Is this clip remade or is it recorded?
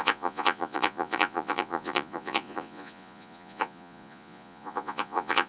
remade